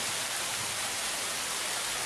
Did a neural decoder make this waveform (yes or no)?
no